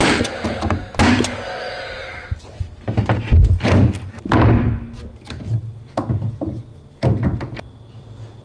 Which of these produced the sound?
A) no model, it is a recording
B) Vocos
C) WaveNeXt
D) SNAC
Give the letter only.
A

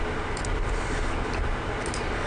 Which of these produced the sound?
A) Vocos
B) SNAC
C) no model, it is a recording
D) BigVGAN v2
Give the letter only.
C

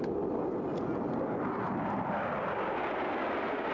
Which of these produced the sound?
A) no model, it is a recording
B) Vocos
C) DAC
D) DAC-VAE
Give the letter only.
A